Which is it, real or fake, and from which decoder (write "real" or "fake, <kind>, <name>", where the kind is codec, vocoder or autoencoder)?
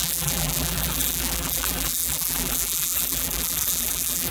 fake, vocoder, BigVGAN v2